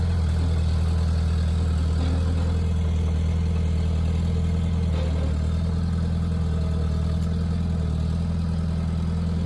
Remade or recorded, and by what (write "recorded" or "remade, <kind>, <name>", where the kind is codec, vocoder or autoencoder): recorded